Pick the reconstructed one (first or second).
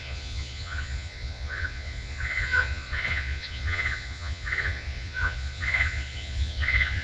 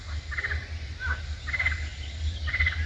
first